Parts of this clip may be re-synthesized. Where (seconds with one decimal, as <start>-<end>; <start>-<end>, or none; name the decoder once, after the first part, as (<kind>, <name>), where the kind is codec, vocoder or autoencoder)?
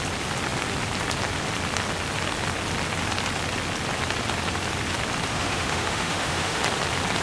5.3-6.6 (autoencoder, DAC-VAE)